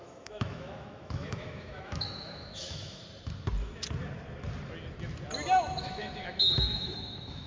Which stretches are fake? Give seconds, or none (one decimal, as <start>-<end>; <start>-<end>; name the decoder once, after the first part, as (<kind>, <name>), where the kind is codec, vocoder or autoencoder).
0.0-3.0 (autoencoder, DAC-VAE); 5.8-7.5